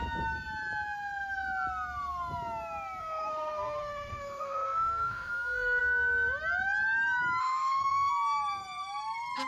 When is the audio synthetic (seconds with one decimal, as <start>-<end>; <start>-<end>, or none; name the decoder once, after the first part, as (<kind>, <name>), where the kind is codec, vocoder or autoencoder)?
3.0-5.8 (autoencoder, DAC-VAE); 7.4-8.1